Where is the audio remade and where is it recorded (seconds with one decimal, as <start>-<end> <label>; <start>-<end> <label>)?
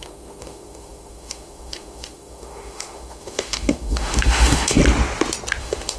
0.0-4.8 remade; 4.8-5.6 recorded; 5.6-6.0 remade